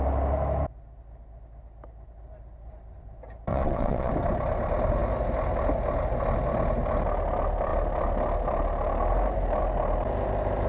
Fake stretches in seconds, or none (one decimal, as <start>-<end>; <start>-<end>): 3.5-4.1